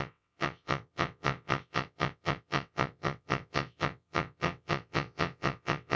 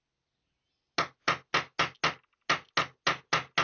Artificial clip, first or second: first